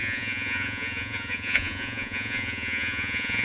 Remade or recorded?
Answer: remade